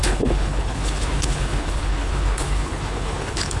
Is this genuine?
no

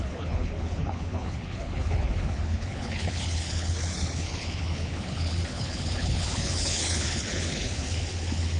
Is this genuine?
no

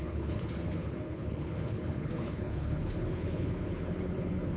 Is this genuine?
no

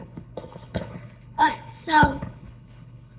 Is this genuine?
no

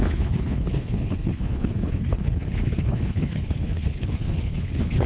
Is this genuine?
no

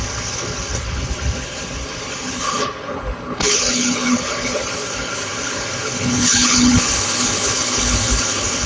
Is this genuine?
no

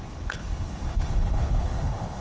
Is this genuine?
no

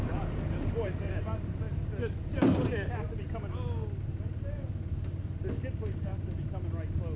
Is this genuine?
yes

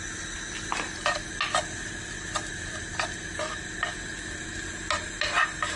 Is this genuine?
yes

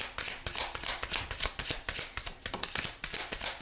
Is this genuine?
yes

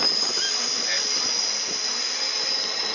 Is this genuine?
yes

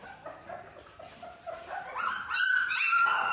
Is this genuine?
yes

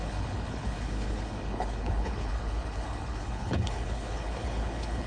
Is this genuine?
no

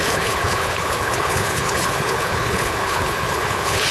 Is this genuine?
no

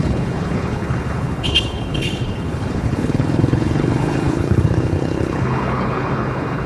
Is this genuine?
no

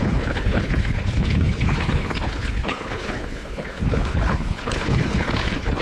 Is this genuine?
no